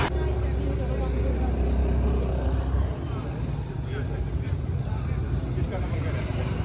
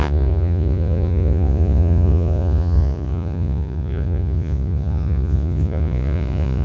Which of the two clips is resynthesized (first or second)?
second